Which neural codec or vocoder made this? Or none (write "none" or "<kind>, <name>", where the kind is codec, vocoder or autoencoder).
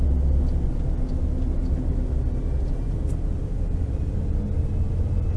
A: none